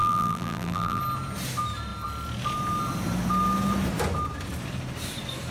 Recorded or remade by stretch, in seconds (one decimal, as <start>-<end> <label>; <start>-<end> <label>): 0.0-1.0 remade; 1.0-5.5 recorded